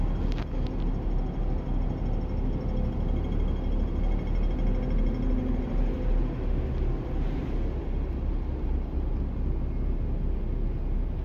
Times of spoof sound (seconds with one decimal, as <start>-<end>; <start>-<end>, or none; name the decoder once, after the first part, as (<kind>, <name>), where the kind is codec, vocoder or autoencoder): none